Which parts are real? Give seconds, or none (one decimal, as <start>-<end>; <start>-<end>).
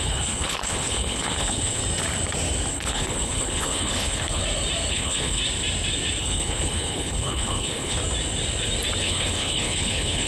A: 1.8-2.7; 4.4-4.9; 5.4-6.2; 8.0-9.0